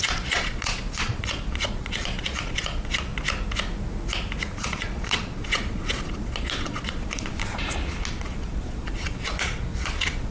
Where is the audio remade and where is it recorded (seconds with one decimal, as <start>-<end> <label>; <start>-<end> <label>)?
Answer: 0.0-3.1 remade; 3.1-4.6 recorded; 4.6-7.3 remade; 7.3-8.1 recorded; 8.1-10.3 remade